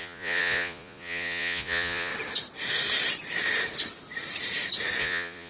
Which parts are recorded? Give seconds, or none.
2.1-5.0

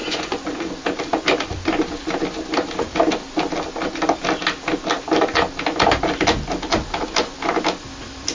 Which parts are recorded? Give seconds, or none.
0.7-8.3

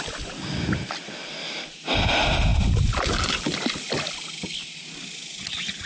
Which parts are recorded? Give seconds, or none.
0.0-5.9

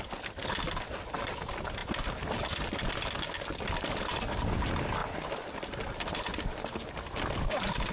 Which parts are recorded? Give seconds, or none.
0.0-7.9

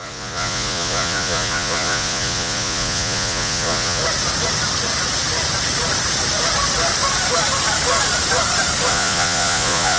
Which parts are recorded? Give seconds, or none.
4.0-8.9

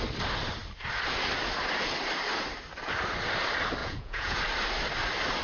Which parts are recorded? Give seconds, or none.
0.0-3.8; 4.4-5.4

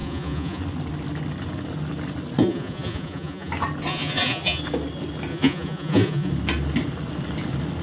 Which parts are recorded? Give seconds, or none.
0.6-2.4; 3.5-3.9; 4.6-5.3; 6.3-7.8